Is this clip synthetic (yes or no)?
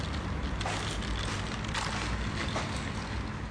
no